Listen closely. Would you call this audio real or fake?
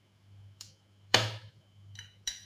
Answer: fake